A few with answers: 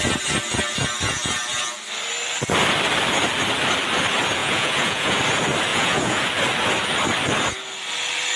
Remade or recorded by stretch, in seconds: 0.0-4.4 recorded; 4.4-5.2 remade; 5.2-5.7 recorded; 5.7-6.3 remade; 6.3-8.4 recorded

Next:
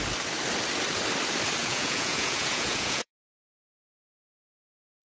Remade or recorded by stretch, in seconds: 0.0-1.6 recorded; 1.6-3.1 remade; 3.1-5.0 recorded

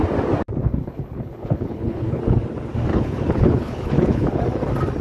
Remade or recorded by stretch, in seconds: 0.0-0.6 recorded; 0.6-2.2 remade; 2.2-2.9 recorded; 2.9-4.4 remade; 4.4-5.0 recorded

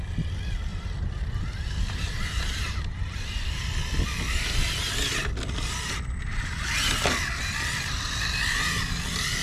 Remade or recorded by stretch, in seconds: 0.0-0.7 recorded; 0.7-3.7 remade; 3.7-9.4 recorded